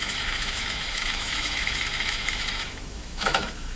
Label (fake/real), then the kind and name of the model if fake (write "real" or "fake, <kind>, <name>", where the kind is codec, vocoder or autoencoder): fake, autoencoder, DAC-VAE